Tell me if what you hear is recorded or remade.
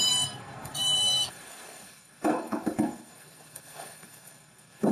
remade